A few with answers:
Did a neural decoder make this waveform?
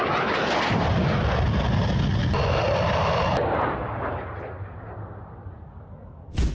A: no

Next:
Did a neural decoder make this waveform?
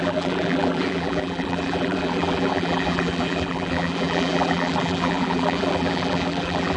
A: yes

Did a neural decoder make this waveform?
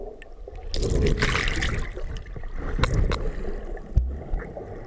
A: no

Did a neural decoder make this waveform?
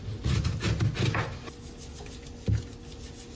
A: no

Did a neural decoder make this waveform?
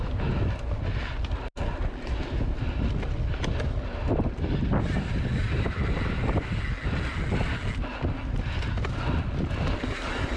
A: no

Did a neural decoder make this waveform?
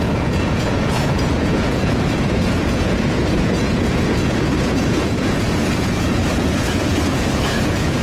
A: yes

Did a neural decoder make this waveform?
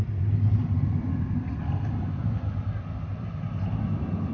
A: no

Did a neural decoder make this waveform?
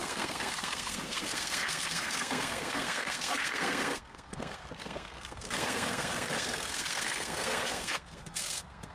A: yes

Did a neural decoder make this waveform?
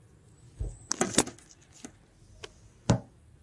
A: no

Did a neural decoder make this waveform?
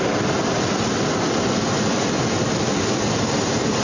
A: no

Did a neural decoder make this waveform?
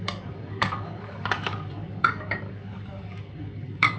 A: yes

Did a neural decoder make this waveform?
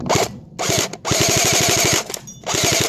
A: no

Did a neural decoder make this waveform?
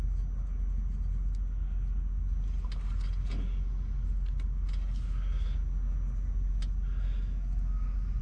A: no